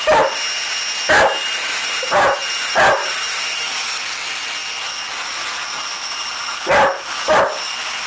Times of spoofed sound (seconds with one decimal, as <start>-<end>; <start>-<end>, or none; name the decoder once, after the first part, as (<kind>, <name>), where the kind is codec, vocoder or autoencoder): 1.4-2.4 (vocoder, BigVGAN v2); 3.0-3.7